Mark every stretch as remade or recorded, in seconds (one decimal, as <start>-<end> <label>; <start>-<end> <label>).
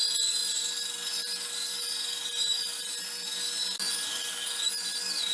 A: 0.0-5.3 recorded